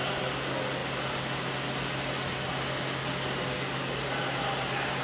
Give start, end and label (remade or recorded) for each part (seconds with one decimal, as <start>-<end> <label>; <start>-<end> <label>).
0.0-5.0 recorded